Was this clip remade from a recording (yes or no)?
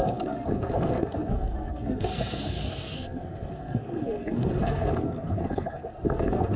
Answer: yes